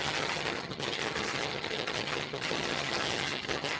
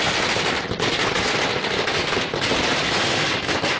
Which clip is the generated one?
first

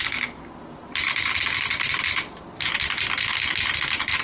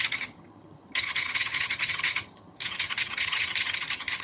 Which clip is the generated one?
second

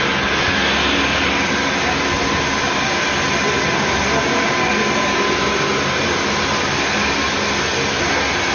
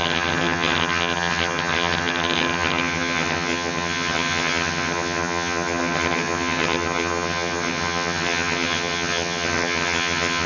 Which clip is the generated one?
second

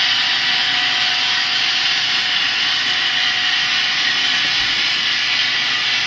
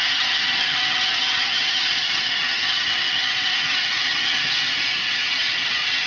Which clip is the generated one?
second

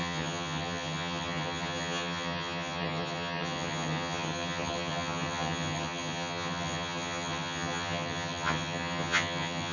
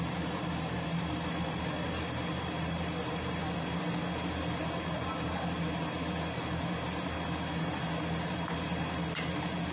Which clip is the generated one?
first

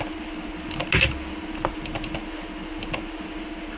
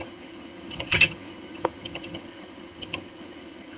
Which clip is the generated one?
second